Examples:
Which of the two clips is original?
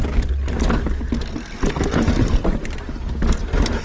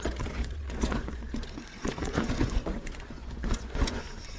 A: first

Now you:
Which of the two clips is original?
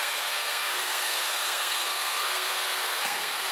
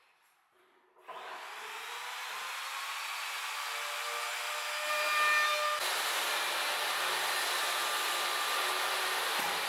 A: second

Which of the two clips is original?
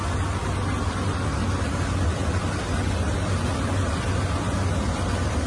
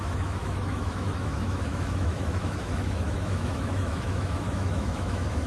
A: first